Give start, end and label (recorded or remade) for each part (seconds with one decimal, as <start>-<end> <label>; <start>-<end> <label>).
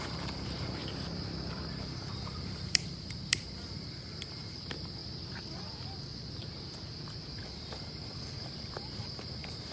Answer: 0.0-0.8 remade; 0.8-1.7 recorded; 1.7-5.0 remade; 5.0-7.3 recorded; 7.3-9.7 remade